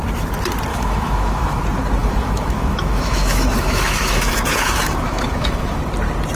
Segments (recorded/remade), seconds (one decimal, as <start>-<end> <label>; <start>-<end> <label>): 0.0-0.7 recorded; 0.7-1.6 remade; 1.6-2.0 recorded; 2.0-5.8 remade; 5.8-6.3 recorded